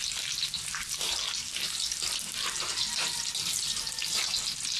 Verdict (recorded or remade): recorded